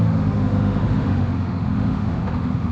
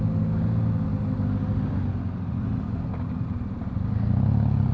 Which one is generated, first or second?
first